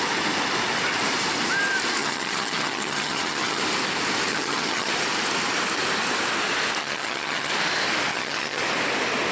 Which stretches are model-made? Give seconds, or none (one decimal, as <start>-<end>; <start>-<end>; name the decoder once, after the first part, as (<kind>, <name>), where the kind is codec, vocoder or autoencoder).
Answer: 2.0-3.6 (vocoder, HiFi-GAN); 4.3-4.9; 6.8-7.5; 8.1-8.6